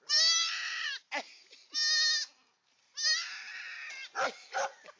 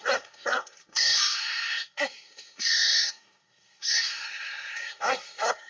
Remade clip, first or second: second